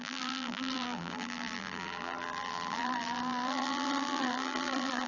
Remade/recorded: remade